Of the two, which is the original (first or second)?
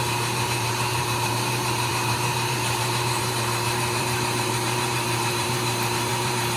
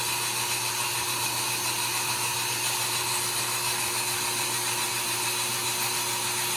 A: second